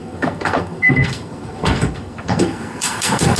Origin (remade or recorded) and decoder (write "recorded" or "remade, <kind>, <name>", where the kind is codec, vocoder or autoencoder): remade, codec, SNAC